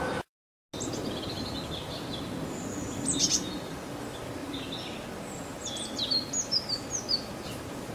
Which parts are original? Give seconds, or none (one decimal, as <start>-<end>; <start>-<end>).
0.0-7.9